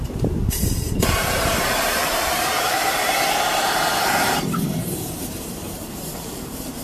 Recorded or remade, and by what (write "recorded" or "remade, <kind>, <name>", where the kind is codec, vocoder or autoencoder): remade, vocoder, BigVGAN v2